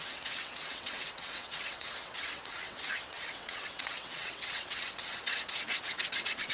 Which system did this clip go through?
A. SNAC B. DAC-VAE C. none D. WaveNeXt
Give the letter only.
D